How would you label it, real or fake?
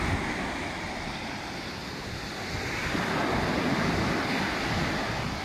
real